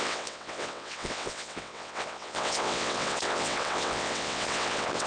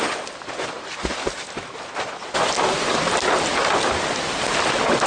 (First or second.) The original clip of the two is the second